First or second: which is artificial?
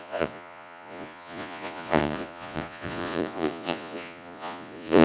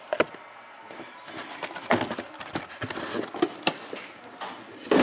first